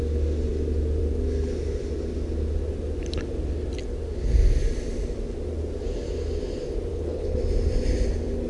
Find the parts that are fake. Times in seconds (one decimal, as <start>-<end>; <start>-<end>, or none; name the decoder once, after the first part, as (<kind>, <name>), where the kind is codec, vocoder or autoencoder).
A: 6.9-7.4 (codec, HILCodec)